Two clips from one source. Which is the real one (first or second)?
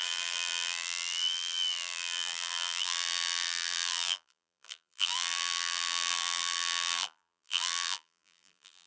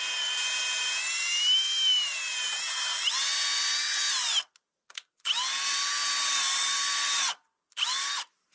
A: second